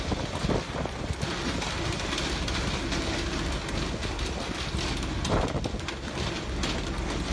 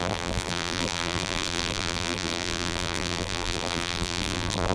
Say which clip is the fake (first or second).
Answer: second